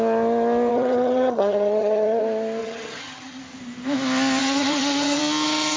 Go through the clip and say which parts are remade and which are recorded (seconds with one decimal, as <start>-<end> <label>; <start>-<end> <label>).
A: 0.0-0.7 recorded; 0.7-2.2 remade; 2.2-2.6 recorded; 2.6-3.4 remade; 3.4-4.4 recorded; 4.4-5.2 remade; 5.2-5.8 recorded